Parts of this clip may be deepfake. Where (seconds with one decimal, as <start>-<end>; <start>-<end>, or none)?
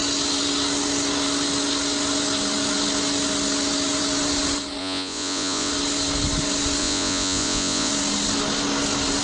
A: 4.8-5.7; 6.8-7.9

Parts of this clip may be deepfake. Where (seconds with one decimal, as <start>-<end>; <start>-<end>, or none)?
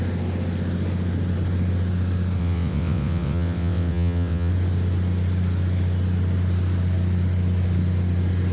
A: 2.4-4.5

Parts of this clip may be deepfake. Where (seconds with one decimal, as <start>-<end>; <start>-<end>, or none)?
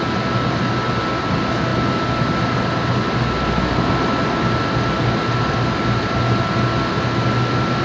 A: none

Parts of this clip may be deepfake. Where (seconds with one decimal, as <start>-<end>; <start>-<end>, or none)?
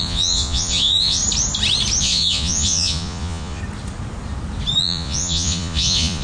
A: 0.0-1.2; 2.0-3.6; 4.8-6.2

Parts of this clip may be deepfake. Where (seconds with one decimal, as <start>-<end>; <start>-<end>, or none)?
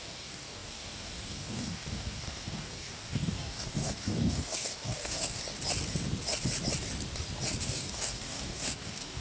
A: 0.0-5.4; 7.6-9.2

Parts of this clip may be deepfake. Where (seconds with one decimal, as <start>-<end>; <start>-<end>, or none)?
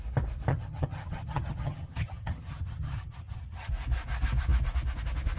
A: 0.5-3.7